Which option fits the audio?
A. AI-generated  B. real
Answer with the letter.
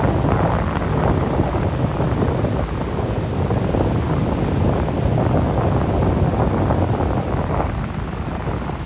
B